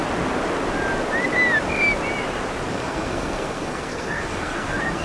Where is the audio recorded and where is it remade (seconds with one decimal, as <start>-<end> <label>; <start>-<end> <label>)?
0.0-2.7 recorded; 2.7-5.0 remade